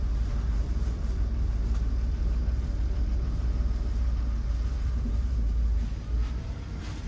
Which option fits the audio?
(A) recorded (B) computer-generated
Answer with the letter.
B